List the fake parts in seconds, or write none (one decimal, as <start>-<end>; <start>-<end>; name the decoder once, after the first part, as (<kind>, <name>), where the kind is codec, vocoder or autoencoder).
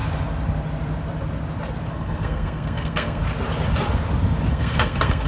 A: 1.9-3.2 (codec, SNAC); 4.5-5.3